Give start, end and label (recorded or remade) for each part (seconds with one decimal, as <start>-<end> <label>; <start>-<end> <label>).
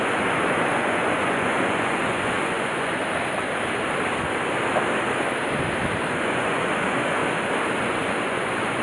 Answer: 0.0-3.0 remade; 3.0-6.1 recorded; 6.1-7.2 remade; 7.2-7.8 recorded; 7.8-8.8 remade